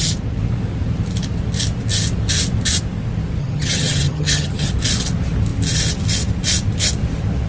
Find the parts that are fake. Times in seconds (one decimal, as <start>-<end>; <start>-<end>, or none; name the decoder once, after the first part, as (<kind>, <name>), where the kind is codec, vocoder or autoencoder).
3.4-4.7 (vocoder, HiFi-GAN)